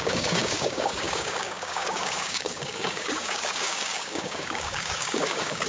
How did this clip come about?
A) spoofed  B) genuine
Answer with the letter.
A